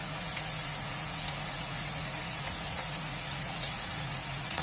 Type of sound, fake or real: fake